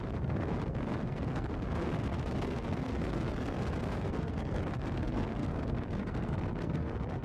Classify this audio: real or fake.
fake